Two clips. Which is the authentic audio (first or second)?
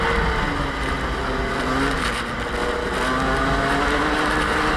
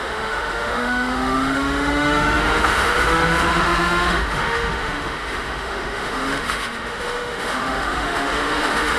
first